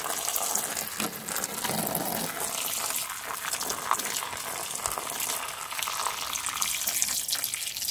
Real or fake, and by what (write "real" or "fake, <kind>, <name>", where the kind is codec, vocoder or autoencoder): real